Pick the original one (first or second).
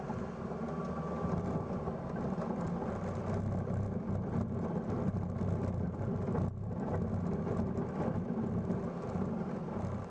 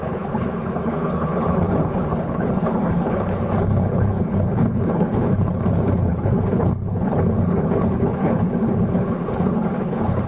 first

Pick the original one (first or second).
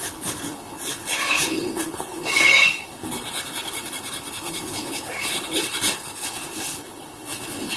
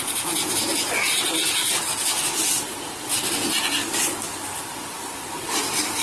second